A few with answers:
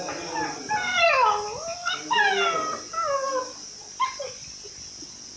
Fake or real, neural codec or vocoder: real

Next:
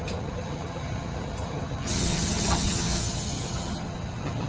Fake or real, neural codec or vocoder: fake, vocoder, HiFi-GAN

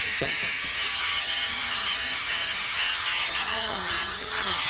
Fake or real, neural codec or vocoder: fake, vocoder, HiFi-GAN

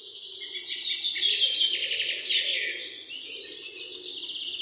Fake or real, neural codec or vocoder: real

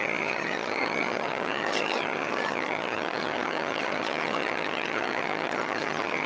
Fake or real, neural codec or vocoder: fake, vocoder, HiFi-GAN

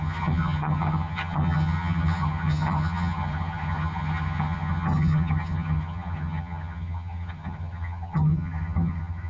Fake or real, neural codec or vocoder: fake, vocoder, HiFi-GAN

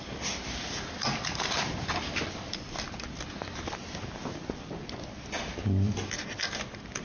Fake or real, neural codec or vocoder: real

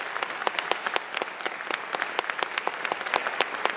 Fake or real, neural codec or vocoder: real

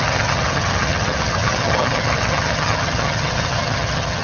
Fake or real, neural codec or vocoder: fake, vocoder, HiFi-GAN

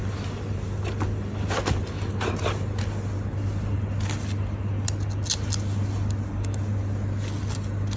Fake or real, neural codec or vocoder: real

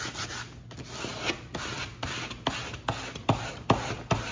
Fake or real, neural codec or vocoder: real